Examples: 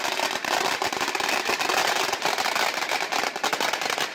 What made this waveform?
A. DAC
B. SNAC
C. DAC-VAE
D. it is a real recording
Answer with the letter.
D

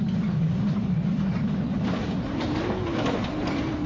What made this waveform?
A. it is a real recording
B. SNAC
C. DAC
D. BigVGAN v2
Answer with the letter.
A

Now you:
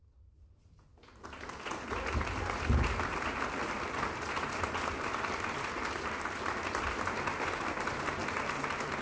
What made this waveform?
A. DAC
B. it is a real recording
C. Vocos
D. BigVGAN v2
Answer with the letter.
B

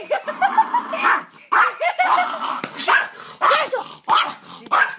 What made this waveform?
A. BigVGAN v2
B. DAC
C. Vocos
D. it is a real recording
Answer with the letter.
D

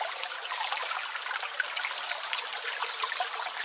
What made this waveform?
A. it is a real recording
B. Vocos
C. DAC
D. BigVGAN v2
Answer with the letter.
A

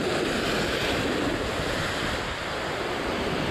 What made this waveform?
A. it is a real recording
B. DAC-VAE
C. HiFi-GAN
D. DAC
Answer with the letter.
A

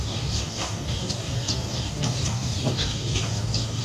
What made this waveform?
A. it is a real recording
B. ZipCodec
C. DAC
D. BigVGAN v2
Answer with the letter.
C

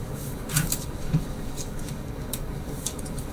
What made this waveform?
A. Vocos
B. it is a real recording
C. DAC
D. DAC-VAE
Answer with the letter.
C